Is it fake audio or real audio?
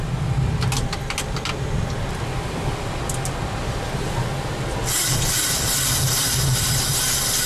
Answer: real